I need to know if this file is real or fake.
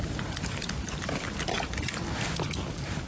real